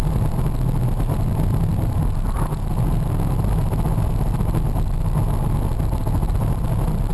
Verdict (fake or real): real